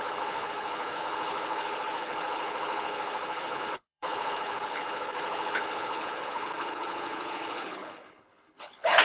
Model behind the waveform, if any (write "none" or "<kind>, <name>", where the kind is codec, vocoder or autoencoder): codec, HILCodec